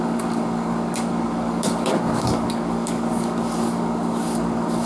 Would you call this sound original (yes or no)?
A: no